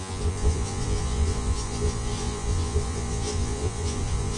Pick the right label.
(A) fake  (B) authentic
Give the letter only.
A